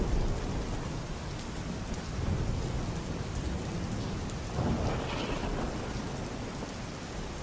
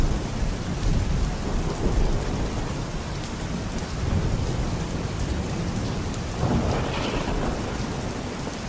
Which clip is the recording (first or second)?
first